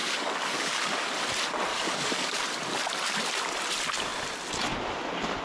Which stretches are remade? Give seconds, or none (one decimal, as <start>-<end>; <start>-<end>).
0.0-1.1; 1.7-2.4